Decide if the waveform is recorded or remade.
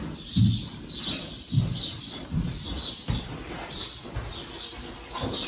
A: recorded